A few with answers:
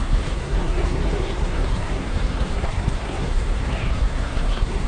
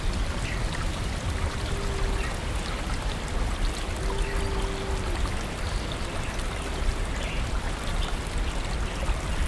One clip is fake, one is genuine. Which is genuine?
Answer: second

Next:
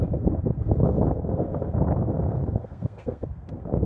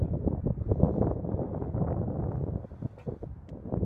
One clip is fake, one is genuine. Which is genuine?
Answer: second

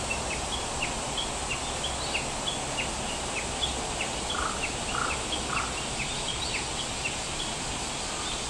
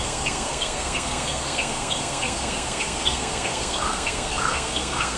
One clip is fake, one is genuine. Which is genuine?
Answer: first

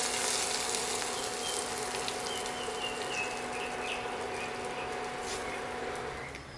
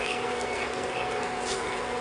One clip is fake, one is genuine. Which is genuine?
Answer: first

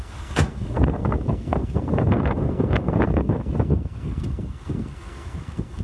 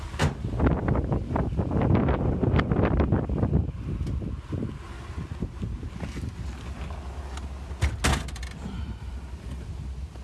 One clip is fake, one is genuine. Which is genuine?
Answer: second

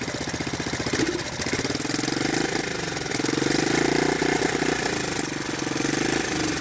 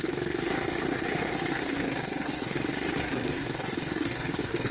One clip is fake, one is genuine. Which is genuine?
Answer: first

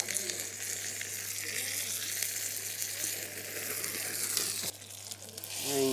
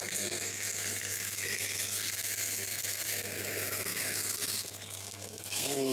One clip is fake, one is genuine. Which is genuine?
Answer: first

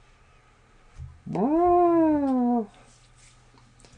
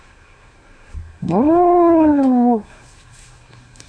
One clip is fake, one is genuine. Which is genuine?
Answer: first